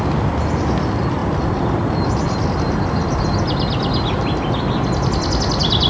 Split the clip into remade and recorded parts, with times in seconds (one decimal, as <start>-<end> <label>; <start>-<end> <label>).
0.0-5.9 recorded